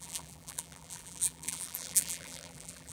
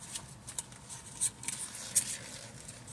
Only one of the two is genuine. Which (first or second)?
second